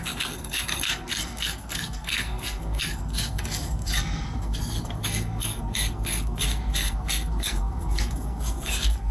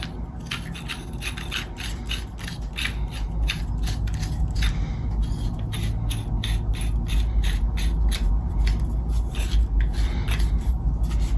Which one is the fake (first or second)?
first